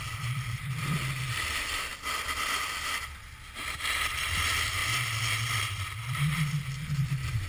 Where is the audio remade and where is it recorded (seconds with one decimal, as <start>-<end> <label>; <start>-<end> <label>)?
0.0-1.9 remade; 1.9-3.2 recorded; 3.2-4.8 remade; 4.8-5.5 recorded; 5.5-7.5 remade